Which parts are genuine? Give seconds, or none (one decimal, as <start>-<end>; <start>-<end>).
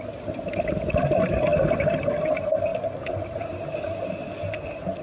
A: 0.0-5.0